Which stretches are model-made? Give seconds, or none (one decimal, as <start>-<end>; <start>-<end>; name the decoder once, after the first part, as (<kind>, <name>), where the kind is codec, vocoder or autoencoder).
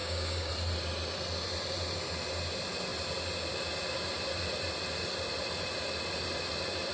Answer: 0.0-0.5 (codec, DAC)